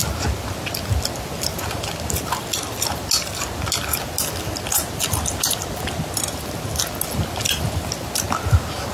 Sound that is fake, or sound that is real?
real